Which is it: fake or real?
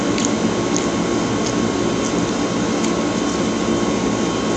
real